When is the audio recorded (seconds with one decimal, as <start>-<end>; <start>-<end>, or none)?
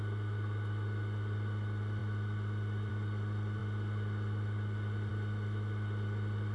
0.0-6.5